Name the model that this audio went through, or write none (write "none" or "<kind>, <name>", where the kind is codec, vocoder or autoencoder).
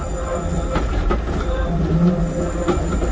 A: none